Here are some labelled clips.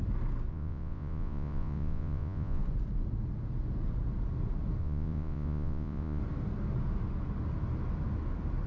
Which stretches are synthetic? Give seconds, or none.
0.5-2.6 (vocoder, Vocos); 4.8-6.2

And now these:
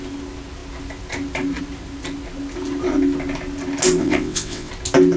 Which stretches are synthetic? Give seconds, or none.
4.0-4.7 (vocoder, WaveNeXt)

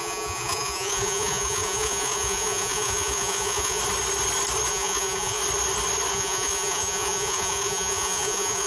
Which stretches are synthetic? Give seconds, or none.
0.0-3.8 (vocoder, Vocos); 4.7-5.4; 6.1-8.7

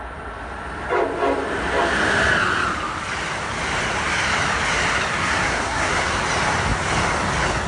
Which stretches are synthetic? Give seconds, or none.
5.2-6.2 (codec, SNAC)